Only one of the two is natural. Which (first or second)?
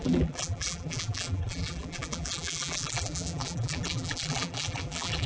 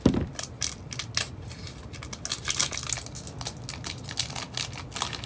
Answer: second